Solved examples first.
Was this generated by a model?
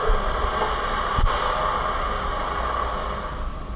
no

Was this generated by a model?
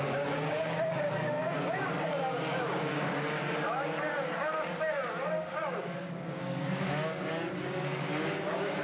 yes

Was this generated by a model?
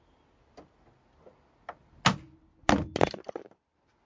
no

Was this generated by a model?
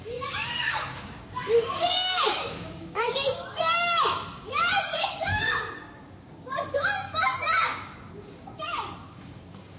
yes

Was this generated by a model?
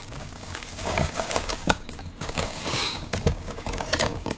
yes